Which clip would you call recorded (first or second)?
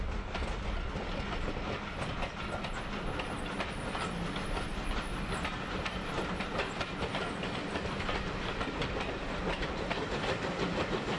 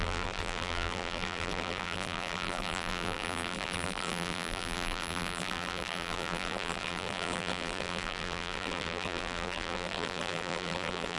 first